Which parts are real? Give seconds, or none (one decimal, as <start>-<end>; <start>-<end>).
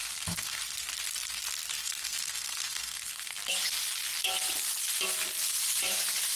0.6-1.8; 3.4-6.4